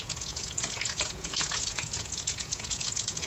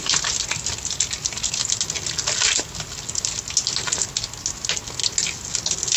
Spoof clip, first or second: first